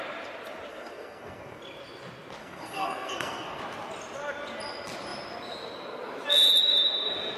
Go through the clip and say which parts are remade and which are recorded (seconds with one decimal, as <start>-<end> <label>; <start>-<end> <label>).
0.0-0.7 recorded; 0.7-1.6 remade; 1.6-2.4 recorded; 2.4-3.6 remade; 3.6-7.4 recorded